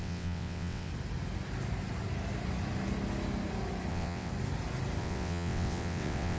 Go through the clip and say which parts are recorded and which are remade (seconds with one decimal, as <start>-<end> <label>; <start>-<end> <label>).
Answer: 0.0-0.9 remade; 0.9-3.9 recorded; 3.9-4.3 remade; 4.3-5.0 recorded; 5.0-6.4 remade